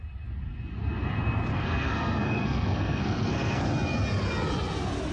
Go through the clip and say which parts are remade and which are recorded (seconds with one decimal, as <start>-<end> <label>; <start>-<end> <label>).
0.0-1.5 recorded; 1.5-3.7 remade; 3.7-5.1 recorded